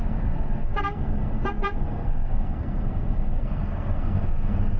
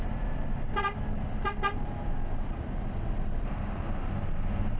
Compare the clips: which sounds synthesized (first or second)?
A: first